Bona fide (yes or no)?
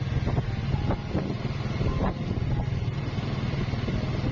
yes